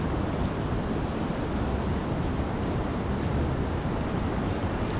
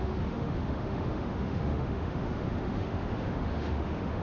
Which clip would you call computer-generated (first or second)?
second